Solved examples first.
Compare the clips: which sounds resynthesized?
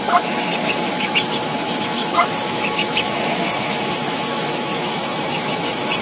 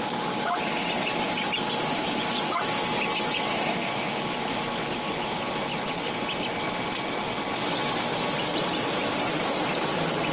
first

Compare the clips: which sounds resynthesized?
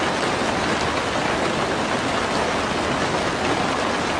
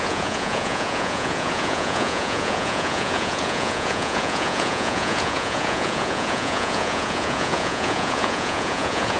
second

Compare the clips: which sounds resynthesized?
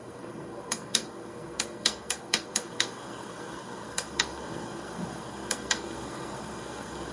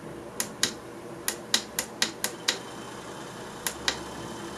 first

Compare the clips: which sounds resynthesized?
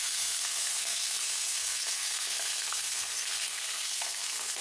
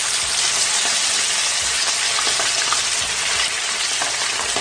first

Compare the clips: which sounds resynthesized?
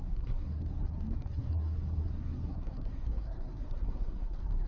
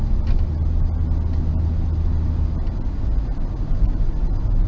first